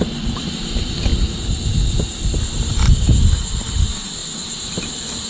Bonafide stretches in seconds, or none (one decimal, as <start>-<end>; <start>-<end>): 0.0-5.3